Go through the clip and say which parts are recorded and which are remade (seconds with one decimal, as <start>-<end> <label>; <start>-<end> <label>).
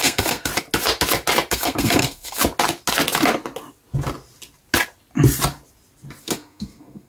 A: 0.0-0.5 remade; 0.5-1.5 recorded; 1.5-2.4 remade; 2.4-6.2 recorded; 6.2-7.1 remade